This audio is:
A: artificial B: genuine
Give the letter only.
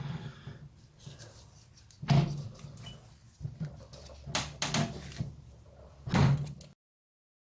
B